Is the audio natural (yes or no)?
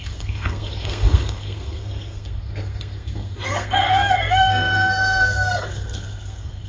no